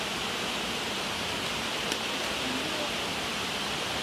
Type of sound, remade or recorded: recorded